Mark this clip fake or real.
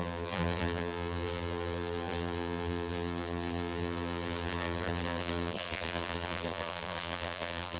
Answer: fake